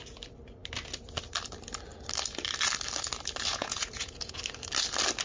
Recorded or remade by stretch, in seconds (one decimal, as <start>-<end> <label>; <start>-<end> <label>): 0.0-3.5 recorded; 3.5-4.4 remade; 4.4-5.2 recorded